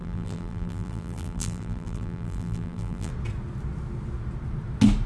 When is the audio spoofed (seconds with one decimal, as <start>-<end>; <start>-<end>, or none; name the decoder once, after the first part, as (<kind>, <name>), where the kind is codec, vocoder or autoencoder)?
0.0-3.1 (vocoder, BigVGAN v2)